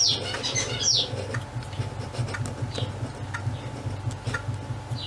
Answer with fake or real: real